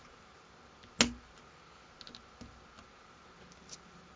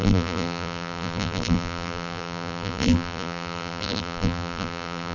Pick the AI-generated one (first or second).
second